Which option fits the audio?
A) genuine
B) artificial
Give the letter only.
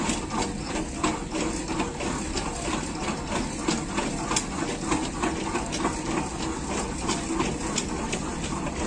A